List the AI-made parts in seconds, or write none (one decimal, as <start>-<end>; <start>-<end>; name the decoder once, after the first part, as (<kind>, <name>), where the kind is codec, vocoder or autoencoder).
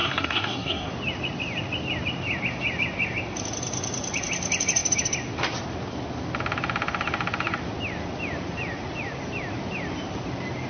0.0-0.9 (codec, SNAC)